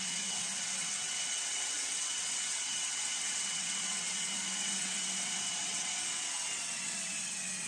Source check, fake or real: fake